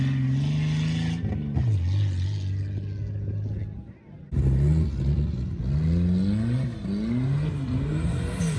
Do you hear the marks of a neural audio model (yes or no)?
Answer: no